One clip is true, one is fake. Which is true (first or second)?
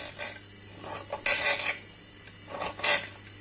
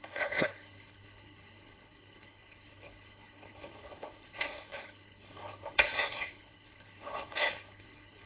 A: first